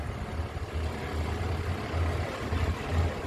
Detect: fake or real real